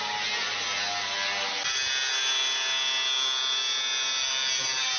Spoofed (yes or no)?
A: no